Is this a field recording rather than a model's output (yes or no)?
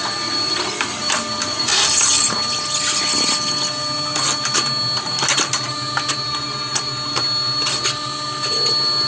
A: yes